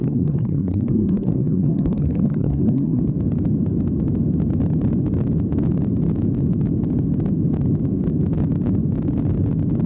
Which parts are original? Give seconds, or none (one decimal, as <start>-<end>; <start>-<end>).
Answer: 3.0-9.9

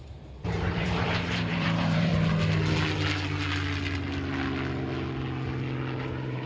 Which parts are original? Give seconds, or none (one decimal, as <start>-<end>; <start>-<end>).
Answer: 2.1-6.0